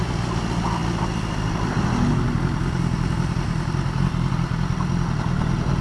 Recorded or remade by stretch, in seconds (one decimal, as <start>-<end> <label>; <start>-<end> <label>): 0.0-5.8 recorded